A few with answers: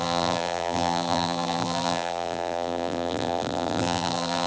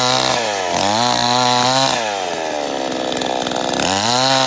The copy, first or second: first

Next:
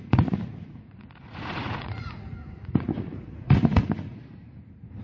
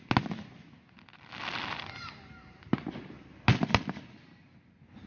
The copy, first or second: first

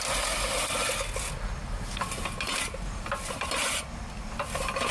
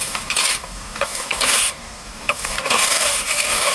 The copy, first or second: second